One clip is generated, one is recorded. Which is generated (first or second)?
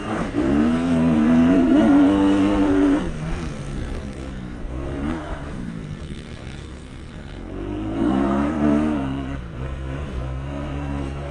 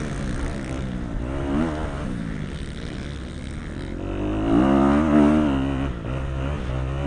first